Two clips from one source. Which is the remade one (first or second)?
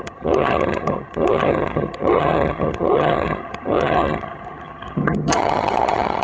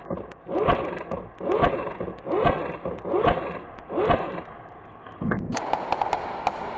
first